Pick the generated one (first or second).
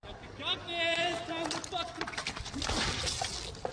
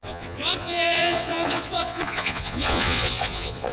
second